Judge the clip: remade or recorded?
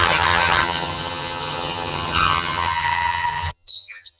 remade